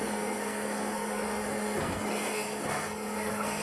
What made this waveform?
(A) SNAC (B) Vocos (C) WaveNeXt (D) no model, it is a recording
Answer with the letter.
A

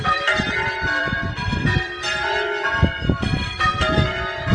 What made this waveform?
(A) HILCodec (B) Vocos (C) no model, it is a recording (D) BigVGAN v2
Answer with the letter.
D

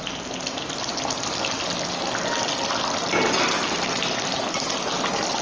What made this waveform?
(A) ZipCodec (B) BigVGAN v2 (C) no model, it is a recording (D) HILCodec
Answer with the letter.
C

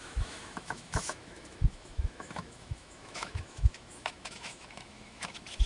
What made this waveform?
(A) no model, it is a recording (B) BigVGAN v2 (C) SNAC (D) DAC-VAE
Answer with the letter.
D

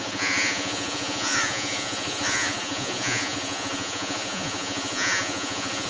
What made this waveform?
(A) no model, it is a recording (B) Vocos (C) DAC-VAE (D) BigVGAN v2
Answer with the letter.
B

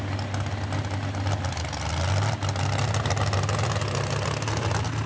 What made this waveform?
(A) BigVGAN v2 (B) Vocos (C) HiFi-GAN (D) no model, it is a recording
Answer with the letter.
D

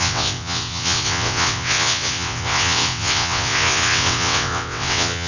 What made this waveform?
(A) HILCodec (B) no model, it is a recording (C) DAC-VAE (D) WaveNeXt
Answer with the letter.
D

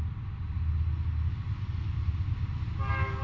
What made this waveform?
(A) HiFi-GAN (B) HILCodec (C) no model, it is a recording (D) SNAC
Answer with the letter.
C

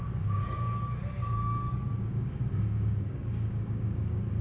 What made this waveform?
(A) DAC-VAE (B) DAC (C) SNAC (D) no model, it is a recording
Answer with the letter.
B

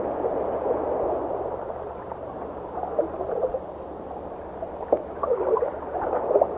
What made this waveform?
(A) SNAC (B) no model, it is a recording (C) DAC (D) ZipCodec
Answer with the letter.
B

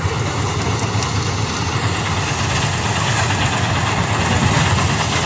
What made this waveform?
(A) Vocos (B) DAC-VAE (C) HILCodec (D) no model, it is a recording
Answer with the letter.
D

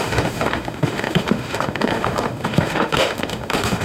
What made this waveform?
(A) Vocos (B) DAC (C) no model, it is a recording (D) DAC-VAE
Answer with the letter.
D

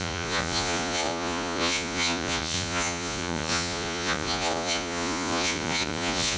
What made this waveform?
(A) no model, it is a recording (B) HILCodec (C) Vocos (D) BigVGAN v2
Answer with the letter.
C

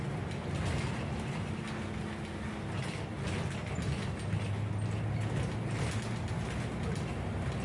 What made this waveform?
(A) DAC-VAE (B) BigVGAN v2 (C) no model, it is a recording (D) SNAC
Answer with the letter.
C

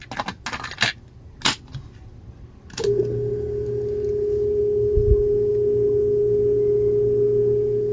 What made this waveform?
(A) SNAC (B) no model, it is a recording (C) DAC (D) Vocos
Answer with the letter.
B